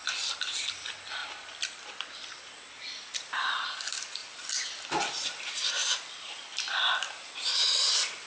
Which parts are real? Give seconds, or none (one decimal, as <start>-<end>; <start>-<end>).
0.0-4.2; 5.7-8.3